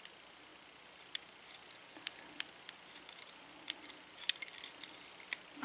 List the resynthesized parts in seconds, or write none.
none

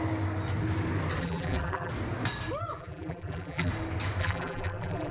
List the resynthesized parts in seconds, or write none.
1.2-1.9 (vocoder, BigVGAN v2); 2.7-3.7; 4.2-5.1

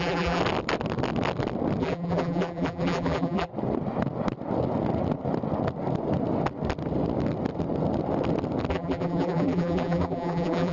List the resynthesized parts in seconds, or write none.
0.0-0.4 (vocoder, BigVGAN v2); 1.8-3.5; 8.7-10.7

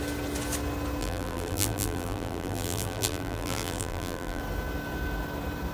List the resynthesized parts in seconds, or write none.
1.0-4.4 (vocoder, BigVGAN v2)

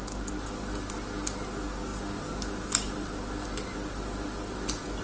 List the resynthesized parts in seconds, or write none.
none

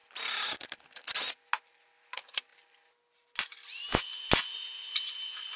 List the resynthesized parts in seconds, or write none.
none

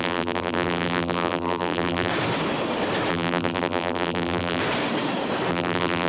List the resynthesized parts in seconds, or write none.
0.0-2.1 (vocoder, BigVGAN v2); 3.1-4.6; 5.5-6.1

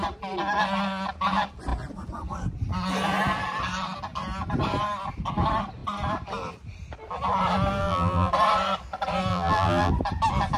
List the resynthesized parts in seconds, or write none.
7.8-8.3 (vocoder, BigVGAN v2); 9.3-9.9